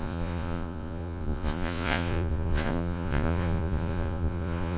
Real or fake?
fake